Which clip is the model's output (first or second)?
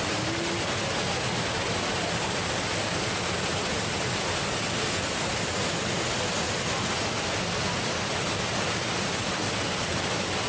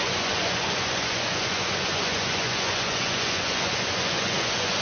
second